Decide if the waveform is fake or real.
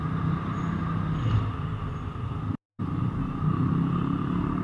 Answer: real